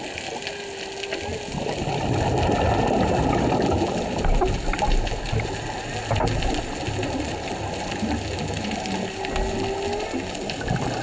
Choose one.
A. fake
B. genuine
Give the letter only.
B